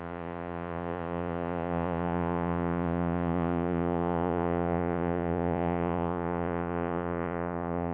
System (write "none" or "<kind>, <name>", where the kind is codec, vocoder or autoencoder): vocoder, Vocos